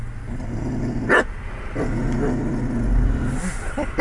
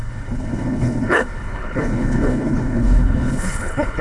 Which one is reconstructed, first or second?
second